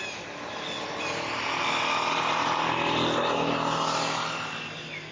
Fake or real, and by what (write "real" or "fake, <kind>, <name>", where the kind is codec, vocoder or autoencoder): real